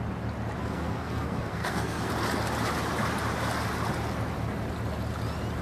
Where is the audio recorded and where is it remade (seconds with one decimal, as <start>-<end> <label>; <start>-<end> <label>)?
0.0-0.6 recorded; 0.6-2.1 remade; 2.1-5.6 recorded